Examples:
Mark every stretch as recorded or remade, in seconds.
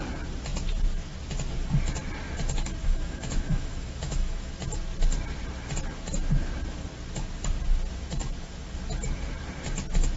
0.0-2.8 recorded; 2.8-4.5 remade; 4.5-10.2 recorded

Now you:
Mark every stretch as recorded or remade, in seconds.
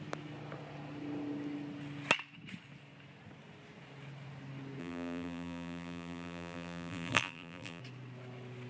0.0-4.8 recorded; 4.8-7.8 remade; 7.8-8.7 recorded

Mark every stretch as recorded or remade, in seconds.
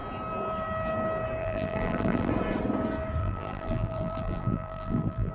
0.0-1.4 recorded; 1.4-2.3 remade; 2.3-3.2 recorded; 3.2-5.3 remade